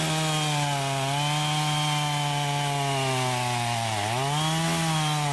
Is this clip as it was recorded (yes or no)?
yes